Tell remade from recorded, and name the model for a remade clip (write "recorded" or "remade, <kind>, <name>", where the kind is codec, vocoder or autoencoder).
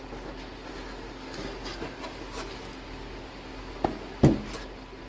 recorded